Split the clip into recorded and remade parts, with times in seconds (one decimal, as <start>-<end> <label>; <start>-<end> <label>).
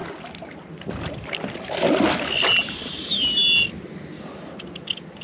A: 0.0-5.2 recorded